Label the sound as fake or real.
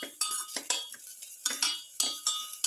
real